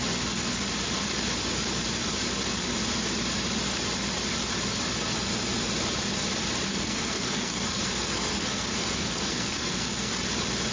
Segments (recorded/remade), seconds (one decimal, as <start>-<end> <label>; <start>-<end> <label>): 0.0-6.7 recorded; 6.7-10.1 remade; 10.1-10.7 recorded